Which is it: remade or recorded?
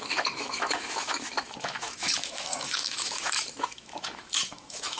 remade